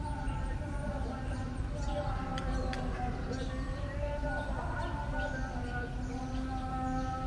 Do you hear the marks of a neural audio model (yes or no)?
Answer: no